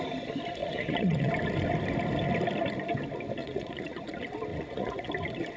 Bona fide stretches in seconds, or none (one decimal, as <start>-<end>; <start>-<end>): 0.0-0.6; 1.3-3.4; 4.1-4.5; 5.1-5.6